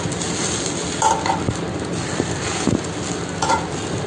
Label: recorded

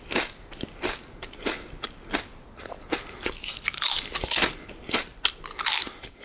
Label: recorded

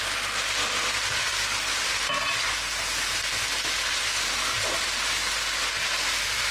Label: recorded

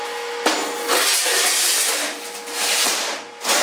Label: recorded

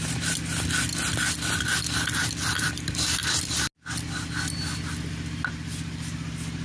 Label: recorded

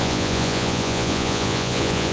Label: remade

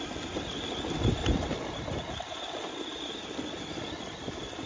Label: recorded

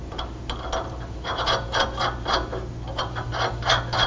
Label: recorded